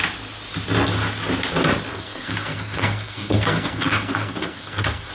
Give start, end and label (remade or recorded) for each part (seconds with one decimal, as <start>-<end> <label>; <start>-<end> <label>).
0.0-1.9 recorded; 1.9-5.1 remade